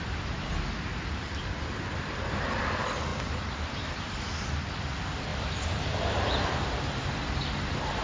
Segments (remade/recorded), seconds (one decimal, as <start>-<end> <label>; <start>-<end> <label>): 0.0-0.9 recorded; 0.9-1.9 remade; 1.9-3.1 recorded; 3.1-3.9 remade; 3.9-5.3 recorded; 5.3-7.0 remade; 7.0-8.0 recorded